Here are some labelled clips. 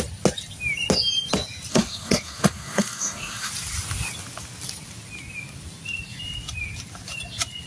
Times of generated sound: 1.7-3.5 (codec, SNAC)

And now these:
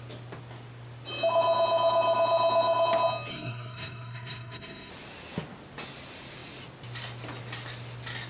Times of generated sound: 3.3-4.9 (codec, SNAC)

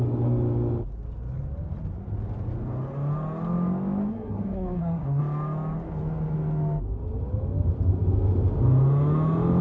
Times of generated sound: 4.1-5.2 (codec, SNAC)

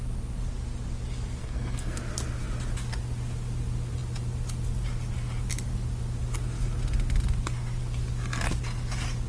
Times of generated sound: 1.4-2.0 (codec, SNAC)

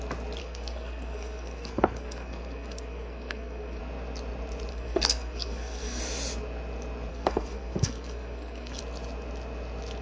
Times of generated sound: 0.4-3.8 (codec, SNAC); 4.7-6.0; 7.1-8.8

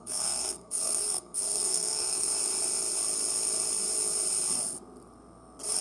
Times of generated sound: 0.0-2.3 (codec, SNAC)

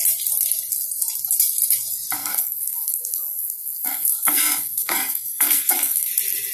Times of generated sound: 2.2-6.1 (codec, SNAC)

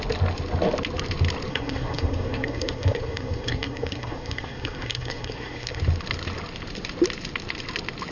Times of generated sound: 1.5-5.8 (codec, SNAC)